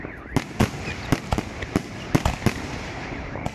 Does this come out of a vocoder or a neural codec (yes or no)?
no